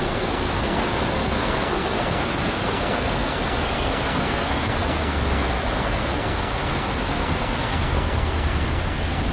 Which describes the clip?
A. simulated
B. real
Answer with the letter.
A